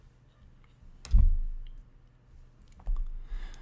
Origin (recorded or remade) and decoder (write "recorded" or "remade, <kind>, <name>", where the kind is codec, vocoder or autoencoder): recorded